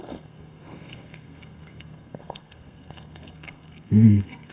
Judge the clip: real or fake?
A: fake